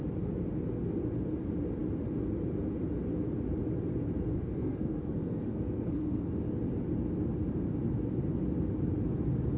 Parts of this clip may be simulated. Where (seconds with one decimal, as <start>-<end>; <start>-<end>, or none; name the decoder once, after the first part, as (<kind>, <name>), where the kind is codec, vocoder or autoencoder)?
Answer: 4.3-6.3 (codec, SNAC)

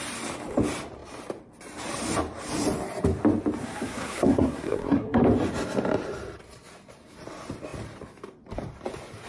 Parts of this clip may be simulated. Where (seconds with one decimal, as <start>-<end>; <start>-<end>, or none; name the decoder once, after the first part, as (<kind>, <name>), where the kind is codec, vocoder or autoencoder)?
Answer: 3.6-5.2 (codec, SNAC)

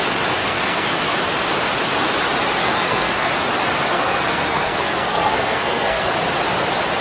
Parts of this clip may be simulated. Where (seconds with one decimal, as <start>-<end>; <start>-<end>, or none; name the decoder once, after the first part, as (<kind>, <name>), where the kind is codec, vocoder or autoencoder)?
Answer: 0.4-1.0 (codec, SNAC); 2.6-3.3; 3.9-6.1